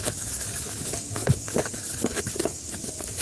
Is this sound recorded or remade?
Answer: remade